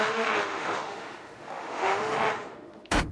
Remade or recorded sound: remade